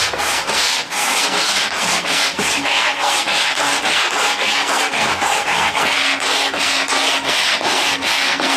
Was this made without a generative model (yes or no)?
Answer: no